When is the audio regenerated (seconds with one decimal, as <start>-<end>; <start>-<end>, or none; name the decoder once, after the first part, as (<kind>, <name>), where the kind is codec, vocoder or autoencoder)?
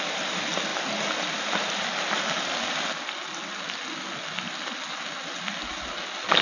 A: none